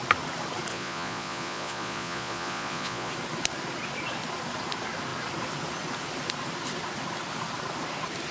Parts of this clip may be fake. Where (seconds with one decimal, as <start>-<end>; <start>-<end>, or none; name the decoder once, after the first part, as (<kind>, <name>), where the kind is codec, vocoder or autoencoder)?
0.7-3.1 (vocoder, Vocos)